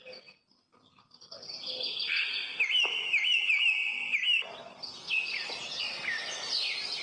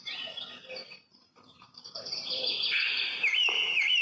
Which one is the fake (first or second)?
second